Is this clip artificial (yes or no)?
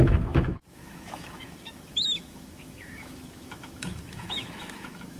yes